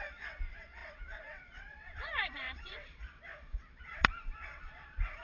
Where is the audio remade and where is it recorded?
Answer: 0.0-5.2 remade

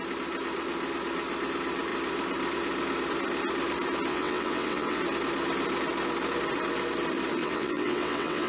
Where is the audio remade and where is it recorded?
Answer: 0.0-4.1 recorded; 4.1-5.0 remade; 5.0-7.4 recorded; 7.4-8.5 remade

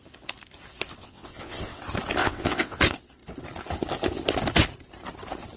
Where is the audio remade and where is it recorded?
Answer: 0.0-1.0 recorded; 1.0-1.8 remade; 1.8-2.2 recorded; 2.2-2.8 remade; 2.8-5.6 recorded

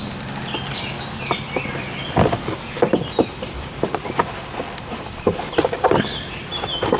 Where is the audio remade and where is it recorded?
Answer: 0.0-7.0 recorded

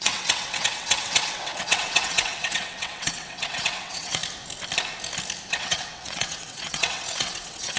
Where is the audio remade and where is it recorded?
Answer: 0.0-4.2 remade; 4.2-5.5 recorded; 5.5-7.8 remade